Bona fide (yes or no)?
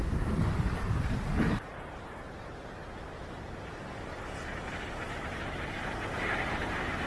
no